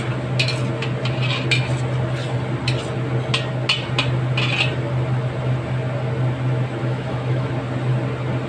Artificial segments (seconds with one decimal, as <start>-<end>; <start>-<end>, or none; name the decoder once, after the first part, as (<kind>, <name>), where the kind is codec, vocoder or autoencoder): 6.8-7.5 (autoencoder, DAC-VAE)